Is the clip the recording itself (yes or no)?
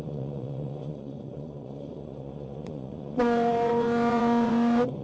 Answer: no